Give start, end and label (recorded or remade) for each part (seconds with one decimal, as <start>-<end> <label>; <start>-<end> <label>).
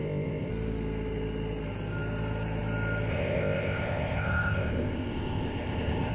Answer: 0.0-0.5 remade; 0.5-3.1 recorded; 3.1-6.1 remade